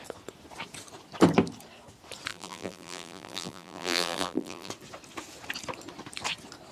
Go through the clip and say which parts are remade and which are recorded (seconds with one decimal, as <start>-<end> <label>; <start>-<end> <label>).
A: 0.0-2.3 recorded; 2.3-4.7 remade; 4.7-6.7 recorded